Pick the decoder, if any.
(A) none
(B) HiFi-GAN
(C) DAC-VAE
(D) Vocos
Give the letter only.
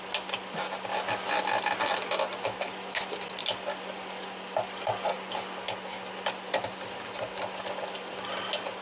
A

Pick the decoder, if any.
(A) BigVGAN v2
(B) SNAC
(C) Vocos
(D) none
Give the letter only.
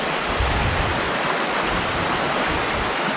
D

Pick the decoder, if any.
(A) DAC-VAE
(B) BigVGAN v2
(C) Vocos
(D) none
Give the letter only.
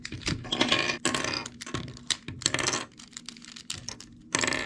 D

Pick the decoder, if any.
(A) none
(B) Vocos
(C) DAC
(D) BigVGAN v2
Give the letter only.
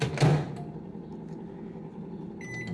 A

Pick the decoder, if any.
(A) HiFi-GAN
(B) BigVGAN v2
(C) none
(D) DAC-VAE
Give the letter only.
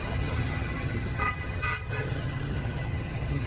A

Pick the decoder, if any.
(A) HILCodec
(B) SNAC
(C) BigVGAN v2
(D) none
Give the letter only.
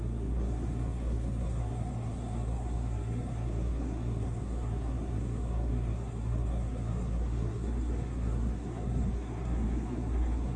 B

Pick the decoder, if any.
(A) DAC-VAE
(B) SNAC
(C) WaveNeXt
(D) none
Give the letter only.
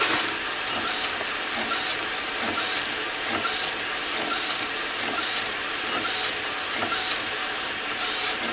D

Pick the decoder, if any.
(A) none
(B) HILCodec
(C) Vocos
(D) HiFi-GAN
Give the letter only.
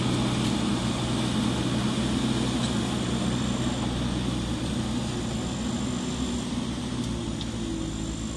A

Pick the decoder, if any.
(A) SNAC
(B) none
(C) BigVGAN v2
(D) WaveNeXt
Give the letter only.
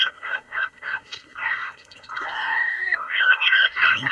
A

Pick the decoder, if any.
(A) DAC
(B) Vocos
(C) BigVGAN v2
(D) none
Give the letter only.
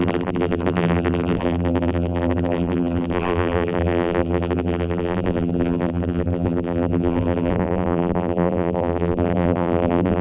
C